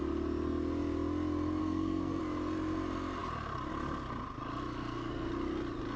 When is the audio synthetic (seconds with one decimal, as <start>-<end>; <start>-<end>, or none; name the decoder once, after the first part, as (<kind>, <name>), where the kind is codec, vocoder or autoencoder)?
1.6-2.2 (codec, SNAC); 4.8-5.3